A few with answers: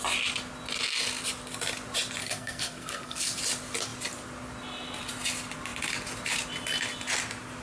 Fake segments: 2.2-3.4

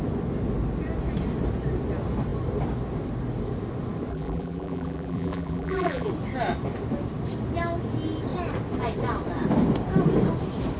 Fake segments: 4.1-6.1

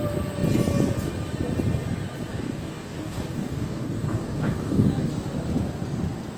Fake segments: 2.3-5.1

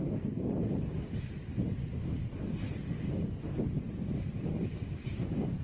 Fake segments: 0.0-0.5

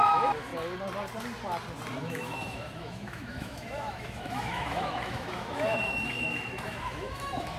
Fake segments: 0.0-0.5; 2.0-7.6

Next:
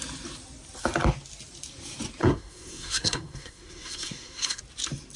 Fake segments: 2.2-4.6

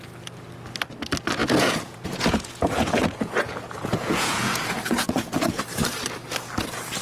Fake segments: 1.4-5.6

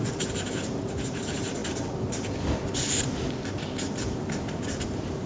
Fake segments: 0.0-1.6; 4.8-5.3